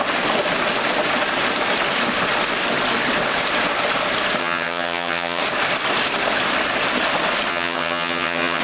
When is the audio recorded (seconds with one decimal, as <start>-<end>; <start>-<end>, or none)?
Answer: 0.0-4.4; 5.4-7.5